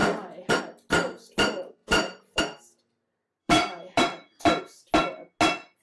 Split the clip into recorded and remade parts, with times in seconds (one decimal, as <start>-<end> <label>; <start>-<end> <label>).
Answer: 0.0-0.6 remade; 0.6-1.8 recorded; 1.8-2.4 remade; 2.4-3.4 recorded; 3.4-4.6 remade; 4.6-5.8 recorded

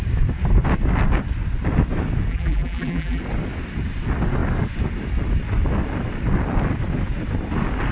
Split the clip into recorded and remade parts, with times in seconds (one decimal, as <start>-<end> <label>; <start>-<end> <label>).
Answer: 0.0-2.3 recorded; 2.3-3.2 remade; 3.2-7.9 recorded